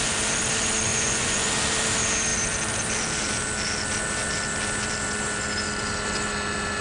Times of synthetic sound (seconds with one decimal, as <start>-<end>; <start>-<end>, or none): 0.9-1.5